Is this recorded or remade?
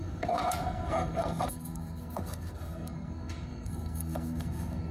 remade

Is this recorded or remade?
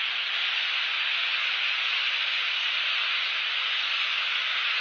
recorded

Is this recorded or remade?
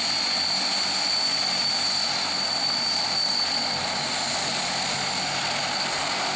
recorded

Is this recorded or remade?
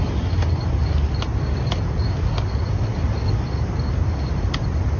recorded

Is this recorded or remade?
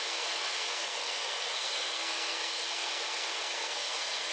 remade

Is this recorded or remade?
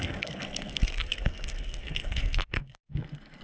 remade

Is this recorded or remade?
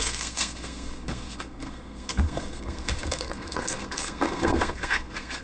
remade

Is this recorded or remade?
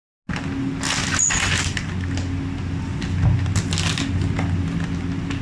recorded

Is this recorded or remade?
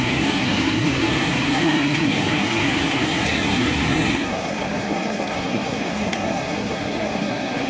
remade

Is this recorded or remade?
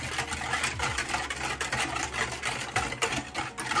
recorded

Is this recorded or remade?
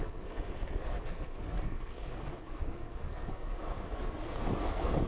remade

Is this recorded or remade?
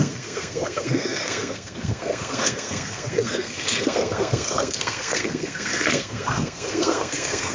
remade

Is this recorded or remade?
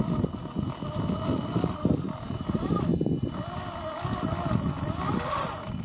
recorded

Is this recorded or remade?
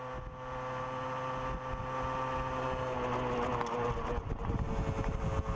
recorded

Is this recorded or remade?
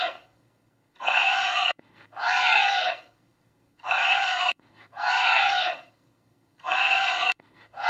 remade